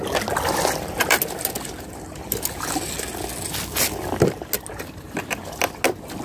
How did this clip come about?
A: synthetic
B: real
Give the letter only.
B